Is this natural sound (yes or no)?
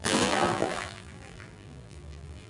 no